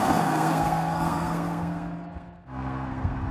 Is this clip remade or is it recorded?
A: remade